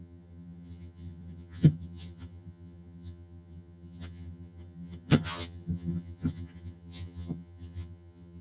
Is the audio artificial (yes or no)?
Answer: yes